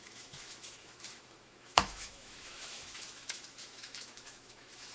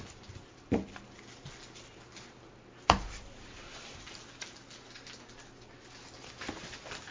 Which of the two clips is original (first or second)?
second